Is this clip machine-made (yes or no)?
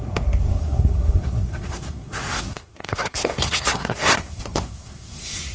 yes